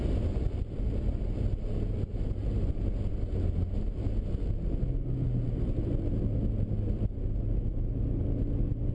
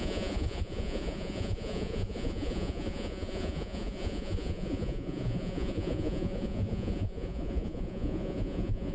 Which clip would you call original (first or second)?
first